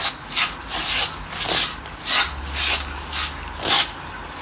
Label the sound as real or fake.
real